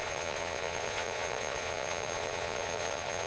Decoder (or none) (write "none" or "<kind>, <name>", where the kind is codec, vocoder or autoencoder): vocoder, Vocos